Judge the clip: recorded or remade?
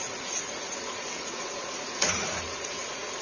remade